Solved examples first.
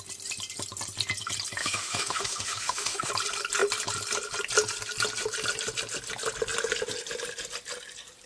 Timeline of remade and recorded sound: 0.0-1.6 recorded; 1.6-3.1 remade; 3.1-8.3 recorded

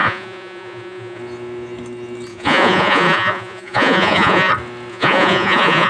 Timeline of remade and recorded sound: 0.0-1.2 remade; 1.2-2.3 recorded; 2.3-4.5 remade; 4.5-4.9 recorded; 4.9-5.9 remade

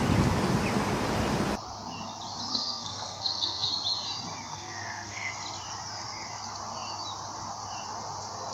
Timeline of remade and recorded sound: 0.0-2.5 recorded; 2.5-3.7 remade; 3.7-4.5 recorded; 4.5-5.3 remade; 5.3-8.5 recorded

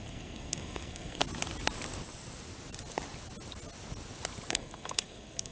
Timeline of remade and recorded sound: 0.0-1.2 remade; 1.2-4.5 recorded; 4.5-5.5 remade

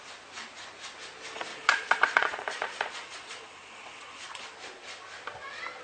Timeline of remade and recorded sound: 0.0-1.5 recorded; 1.5-4.4 remade; 4.4-5.8 recorded

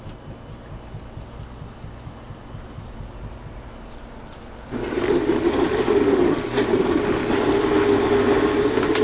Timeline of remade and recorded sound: 0.0-9.0 recorded